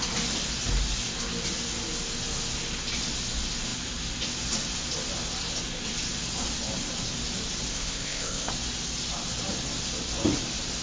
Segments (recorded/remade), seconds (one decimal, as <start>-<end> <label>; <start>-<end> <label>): 0.0-7.7 recorded; 7.7-8.5 remade; 8.5-10.8 recorded